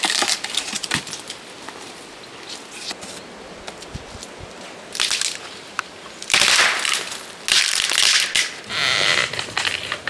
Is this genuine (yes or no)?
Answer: yes